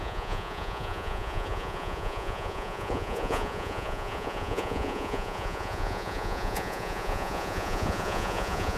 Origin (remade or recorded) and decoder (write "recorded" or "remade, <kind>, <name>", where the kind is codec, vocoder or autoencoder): remade, vocoder, Vocos